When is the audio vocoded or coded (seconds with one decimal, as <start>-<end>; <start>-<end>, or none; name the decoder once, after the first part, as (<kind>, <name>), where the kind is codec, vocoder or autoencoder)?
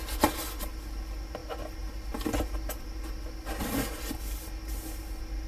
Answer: none